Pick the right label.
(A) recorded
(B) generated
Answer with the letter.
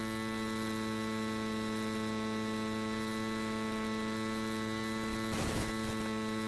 A